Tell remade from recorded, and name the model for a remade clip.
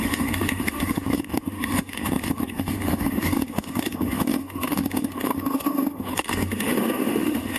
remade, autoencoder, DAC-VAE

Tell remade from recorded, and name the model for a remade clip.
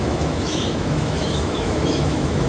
remade, autoencoder, DAC-VAE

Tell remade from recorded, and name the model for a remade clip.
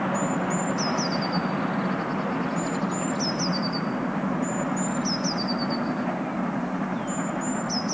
recorded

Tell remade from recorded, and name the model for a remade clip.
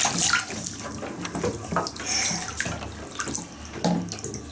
recorded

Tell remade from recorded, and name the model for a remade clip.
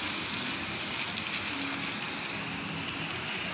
recorded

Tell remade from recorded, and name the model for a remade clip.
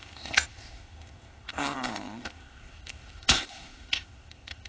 remade, codec, ZipCodec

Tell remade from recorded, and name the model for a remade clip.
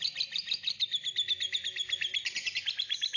recorded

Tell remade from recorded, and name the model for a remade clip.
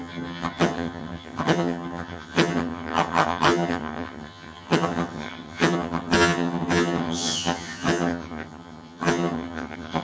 remade, vocoder, HiFi-GAN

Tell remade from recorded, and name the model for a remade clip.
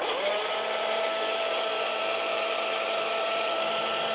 remade, vocoder, BigVGAN v2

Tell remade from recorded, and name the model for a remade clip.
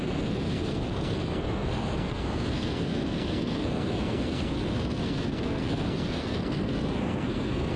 remade, codec, SNAC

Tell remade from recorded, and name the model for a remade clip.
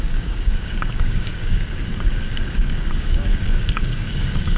remade, codec, DAC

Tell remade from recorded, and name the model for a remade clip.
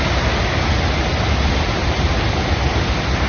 recorded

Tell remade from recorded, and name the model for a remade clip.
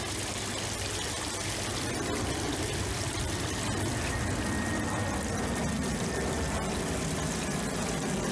recorded